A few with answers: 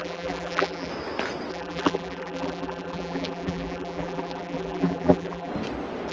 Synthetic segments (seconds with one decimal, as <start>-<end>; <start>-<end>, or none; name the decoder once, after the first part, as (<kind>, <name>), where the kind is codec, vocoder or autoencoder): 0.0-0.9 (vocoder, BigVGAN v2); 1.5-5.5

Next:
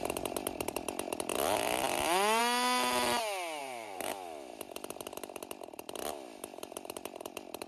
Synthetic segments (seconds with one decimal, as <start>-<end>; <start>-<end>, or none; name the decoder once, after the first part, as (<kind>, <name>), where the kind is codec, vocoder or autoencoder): 3.6-4.1 (vocoder, BigVGAN v2)

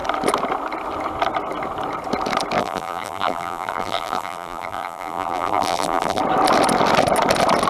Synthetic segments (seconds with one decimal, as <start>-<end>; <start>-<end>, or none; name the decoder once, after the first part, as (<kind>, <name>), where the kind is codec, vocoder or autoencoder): 2.6-6.2 (vocoder, BigVGAN v2)

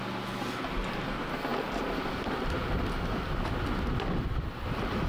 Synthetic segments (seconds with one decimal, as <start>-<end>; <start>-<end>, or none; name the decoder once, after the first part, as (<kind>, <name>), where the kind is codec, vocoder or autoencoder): none

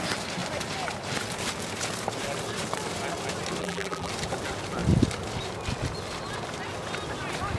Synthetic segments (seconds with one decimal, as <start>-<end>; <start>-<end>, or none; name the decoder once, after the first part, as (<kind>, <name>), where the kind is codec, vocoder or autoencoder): 3.6-4.1 (vocoder, BigVGAN v2)

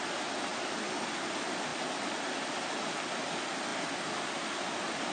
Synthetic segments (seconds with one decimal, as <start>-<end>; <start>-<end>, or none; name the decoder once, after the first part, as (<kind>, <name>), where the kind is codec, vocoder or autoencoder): none